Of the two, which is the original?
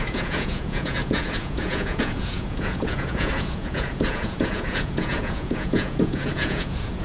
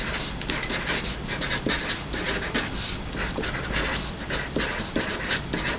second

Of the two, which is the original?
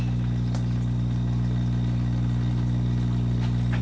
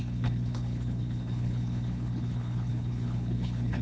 first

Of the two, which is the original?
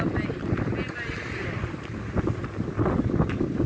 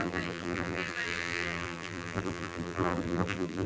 first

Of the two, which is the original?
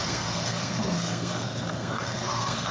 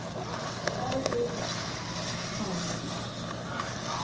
second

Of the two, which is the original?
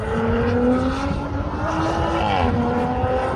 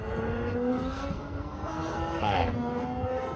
first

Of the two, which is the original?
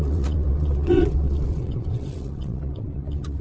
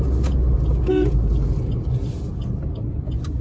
second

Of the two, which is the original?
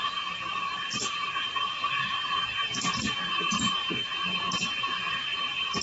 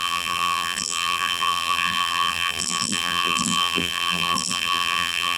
first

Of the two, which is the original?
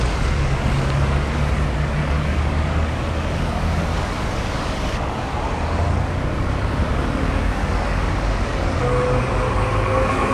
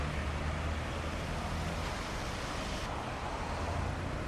second